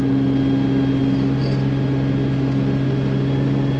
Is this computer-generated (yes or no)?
no